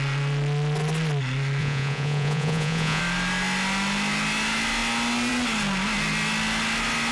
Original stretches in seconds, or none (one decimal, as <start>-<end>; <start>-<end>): 0.0-1.6; 3.0-7.1